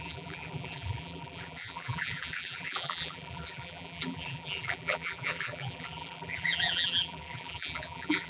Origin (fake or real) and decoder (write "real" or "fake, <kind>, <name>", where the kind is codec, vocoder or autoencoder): fake, vocoder, BigVGAN v2